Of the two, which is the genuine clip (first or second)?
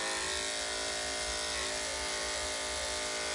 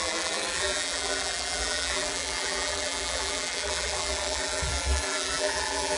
first